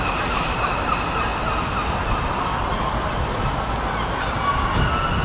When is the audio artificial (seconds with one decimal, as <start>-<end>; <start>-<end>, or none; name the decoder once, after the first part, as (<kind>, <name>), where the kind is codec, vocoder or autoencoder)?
none